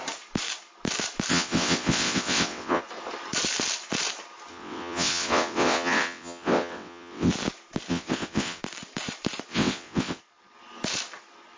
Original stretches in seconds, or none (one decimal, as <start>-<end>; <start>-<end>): 0.0-1.3; 2.8-4.5; 7.3-7.9; 8.6-9.5; 10.2-11.6